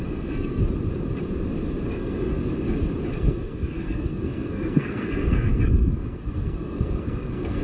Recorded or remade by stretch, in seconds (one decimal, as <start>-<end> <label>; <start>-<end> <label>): 0.0-0.6 remade; 0.6-1.9 recorded; 1.9-2.4 remade; 2.4-3.1 recorded; 3.1-7.6 remade